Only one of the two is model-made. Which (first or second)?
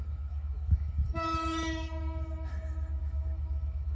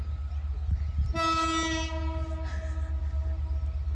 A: first